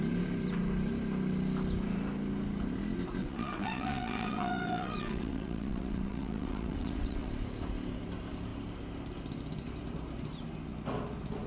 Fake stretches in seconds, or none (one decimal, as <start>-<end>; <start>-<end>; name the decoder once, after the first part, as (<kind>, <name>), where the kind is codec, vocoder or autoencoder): 3.2-7.3 (vocoder, WaveNeXt)